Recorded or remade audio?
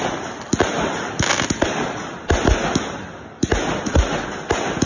recorded